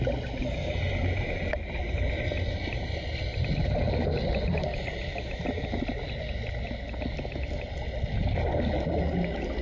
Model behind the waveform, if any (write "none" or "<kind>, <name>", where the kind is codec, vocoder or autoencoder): none